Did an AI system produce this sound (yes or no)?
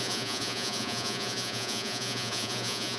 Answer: yes